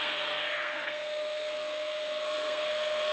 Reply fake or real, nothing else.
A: fake